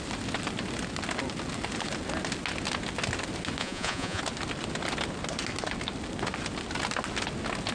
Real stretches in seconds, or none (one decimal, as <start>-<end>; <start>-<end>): 0.0-3.6; 4.2-7.7